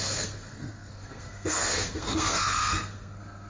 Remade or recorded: remade